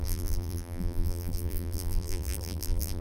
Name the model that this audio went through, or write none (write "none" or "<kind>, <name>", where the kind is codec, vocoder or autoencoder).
vocoder, BigVGAN v2